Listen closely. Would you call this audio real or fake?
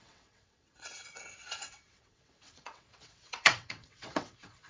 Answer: fake